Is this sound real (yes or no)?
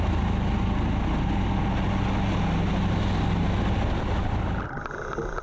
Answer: yes